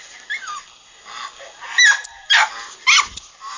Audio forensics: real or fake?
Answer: real